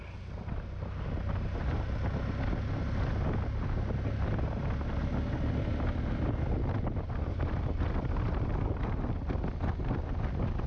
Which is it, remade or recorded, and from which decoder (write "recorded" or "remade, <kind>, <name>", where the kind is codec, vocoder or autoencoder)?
recorded